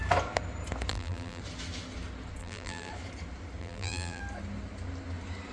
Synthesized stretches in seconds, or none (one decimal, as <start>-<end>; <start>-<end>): 0.9-1.4; 2.4-2.9; 3.6-4.2